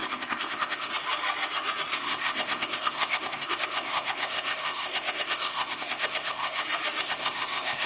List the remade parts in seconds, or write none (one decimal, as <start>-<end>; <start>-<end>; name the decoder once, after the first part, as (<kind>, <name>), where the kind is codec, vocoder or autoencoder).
0.0-0.9 (codec, ZipCodec); 1.9-6.6; 7.0-7.9